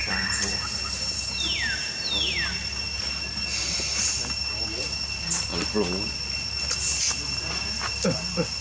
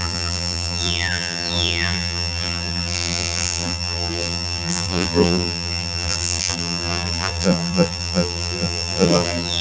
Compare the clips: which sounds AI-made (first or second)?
second